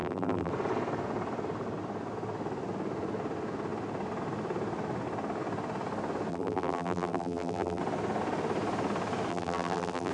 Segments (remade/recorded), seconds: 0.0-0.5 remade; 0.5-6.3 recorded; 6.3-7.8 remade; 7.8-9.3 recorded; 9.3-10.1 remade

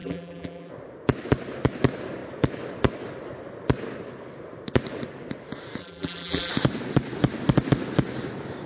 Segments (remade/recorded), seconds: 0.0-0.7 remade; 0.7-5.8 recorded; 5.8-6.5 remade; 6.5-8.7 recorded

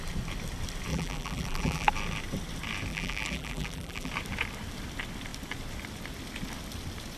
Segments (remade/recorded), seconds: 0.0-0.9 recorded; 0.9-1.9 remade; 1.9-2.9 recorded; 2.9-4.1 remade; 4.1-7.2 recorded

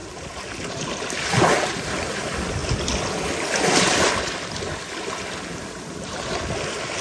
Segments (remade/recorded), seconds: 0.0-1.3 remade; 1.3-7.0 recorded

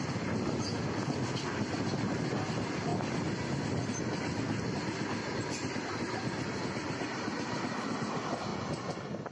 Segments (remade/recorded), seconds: 0.0-9.3 recorded

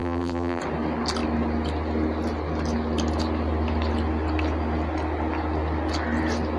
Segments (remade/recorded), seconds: 0.0-0.6 remade; 0.6-6.6 recorded